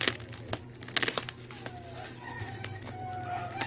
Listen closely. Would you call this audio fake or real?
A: real